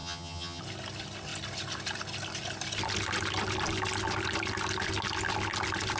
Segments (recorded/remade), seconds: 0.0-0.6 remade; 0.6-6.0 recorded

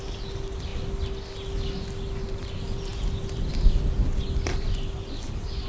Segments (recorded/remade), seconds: 0.0-5.7 recorded

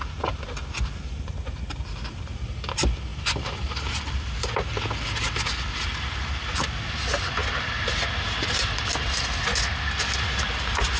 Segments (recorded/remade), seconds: 0.0-11.0 recorded

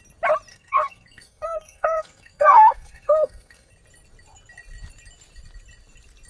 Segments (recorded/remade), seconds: 0.0-0.5 recorded; 0.5-3.7 remade; 3.7-6.3 recorded